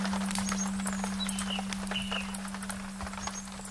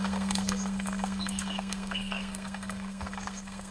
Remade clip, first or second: second